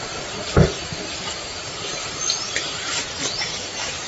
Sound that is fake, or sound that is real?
real